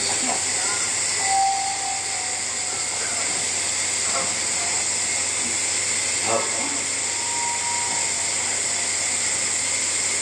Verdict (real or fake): real